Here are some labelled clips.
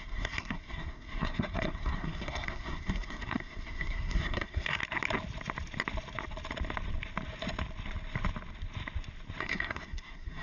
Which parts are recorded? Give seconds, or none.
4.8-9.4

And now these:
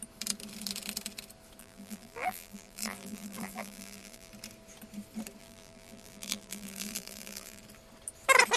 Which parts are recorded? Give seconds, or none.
0.0-1.6; 4.3-5.4; 7.6-8.6

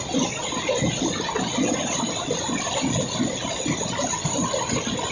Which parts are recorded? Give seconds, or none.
0.0-5.1

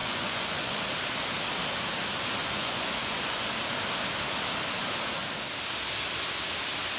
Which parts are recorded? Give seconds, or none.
0.8-2.4; 3.5-7.0